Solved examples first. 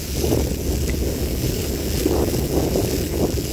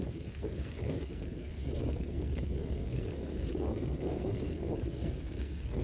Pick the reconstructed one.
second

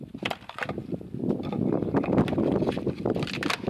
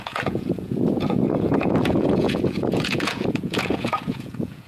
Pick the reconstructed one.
second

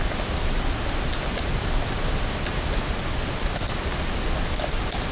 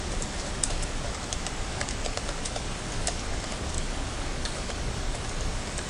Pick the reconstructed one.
second